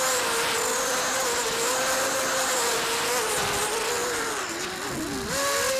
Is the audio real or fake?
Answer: real